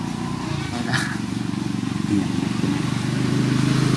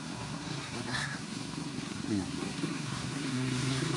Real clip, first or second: first